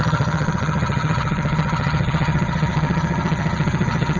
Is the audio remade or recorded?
remade